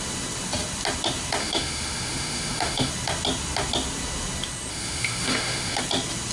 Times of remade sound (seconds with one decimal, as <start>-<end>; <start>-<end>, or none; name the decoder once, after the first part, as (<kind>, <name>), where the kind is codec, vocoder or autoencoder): 1.4-2.9 (autoencoder, DAC-VAE); 4.7-5.8